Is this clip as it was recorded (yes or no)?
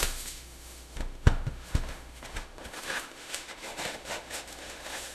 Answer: no